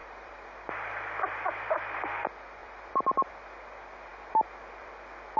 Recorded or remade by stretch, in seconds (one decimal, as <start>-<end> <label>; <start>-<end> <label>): 0.0-1.5 remade; 1.5-2.6 recorded; 2.6-3.3 remade; 3.3-4.1 recorded; 4.1-5.4 remade

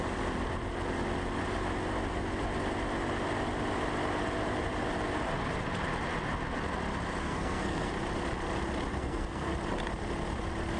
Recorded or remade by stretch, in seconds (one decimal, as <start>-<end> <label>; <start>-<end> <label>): 0.0-7.2 recorded; 7.2-7.9 remade; 7.9-8.9 recorded; 8.9-9.5 remade; 9.5-10.8 recorded

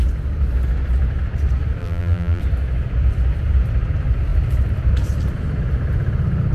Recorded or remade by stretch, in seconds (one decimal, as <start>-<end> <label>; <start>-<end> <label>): 0.0-1.8 recorded; 1.8-2.4 remade; 2.4-6.5 recorded

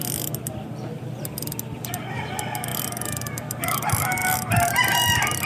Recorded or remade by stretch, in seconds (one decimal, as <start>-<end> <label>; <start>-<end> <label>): 0.0-5.5 recorded

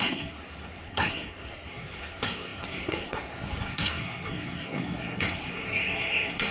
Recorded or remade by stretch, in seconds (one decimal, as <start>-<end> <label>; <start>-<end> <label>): 0.0-6.5 remade

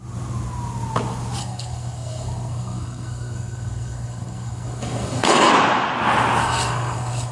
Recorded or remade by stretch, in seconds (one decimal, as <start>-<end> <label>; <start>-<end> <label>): 0.0-1.4 recorded; 1.4-5.5 remade; 5.5-6.4 recorded; 6.4-7.3 remade

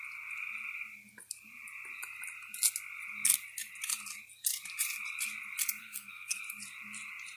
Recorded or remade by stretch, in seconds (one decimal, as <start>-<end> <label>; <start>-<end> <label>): 0.0-5.8 recorded; 5.8-6.4 remade; 6.4-7.4 recorded